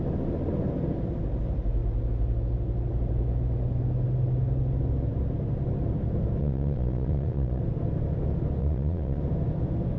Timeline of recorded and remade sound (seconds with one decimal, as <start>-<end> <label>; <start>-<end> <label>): 0.0-6.4 recorded; 6.4-7.6 remade; 7.6-8.6 recorded; 8.6-9.2 remade; 9.2-10.0 recorded